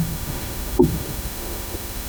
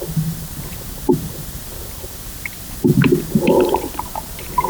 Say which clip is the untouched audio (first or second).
second